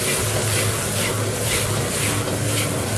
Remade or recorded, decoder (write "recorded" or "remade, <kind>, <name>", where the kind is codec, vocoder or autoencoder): recorded